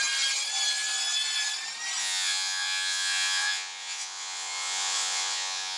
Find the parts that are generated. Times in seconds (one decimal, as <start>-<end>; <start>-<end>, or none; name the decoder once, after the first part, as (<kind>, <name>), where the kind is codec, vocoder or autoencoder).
2.0-5.8 (vocoder, Vocos)